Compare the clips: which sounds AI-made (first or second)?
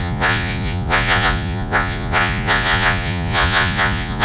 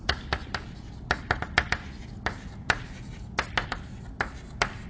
first